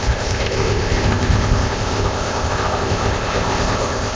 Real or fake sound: fake